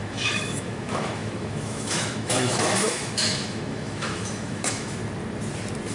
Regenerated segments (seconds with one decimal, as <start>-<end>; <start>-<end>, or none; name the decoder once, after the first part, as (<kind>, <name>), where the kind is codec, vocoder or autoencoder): 0.0-5.0 (autoencoder, DAC-VAE)